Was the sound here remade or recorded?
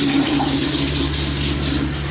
recorded